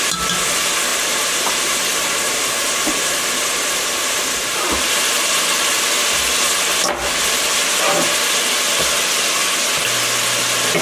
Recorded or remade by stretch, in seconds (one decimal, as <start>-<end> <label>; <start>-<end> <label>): 0.0-0.9 recorded; 0.9-5.6 remade; 5.6-10.8 recorded